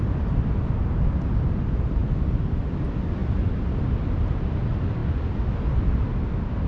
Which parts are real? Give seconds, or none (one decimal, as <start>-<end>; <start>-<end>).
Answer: 0.0-6.7